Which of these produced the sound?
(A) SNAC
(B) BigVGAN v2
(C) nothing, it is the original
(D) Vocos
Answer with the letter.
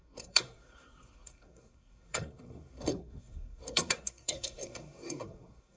A